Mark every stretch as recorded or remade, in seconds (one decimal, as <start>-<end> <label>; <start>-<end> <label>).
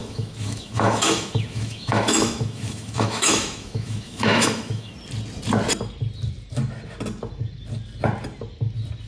0.0-4.9 remade; 4.9-9.1 recorded